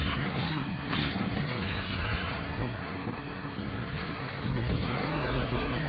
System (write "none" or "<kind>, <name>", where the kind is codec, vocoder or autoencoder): codec, SNAC